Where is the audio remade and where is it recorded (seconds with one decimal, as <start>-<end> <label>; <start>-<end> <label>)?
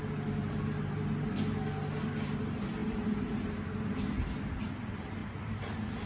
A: 0.0-2.8 recorded; 2.8-4.3 remade; 4.3-5.2 recorded; 5.2-6.1 remade